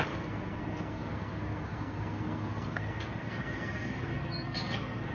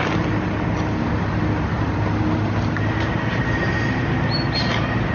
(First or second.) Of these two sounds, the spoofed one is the first